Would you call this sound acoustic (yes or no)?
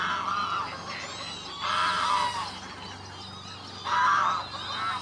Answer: yes